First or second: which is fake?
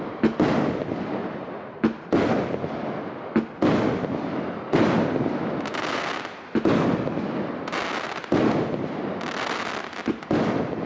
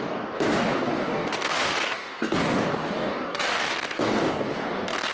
second